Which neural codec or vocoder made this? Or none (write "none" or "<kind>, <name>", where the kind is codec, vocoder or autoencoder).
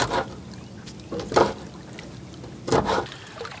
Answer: none